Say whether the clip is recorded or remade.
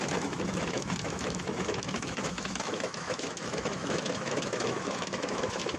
remade